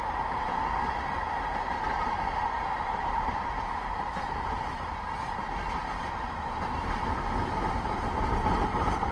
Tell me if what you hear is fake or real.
fake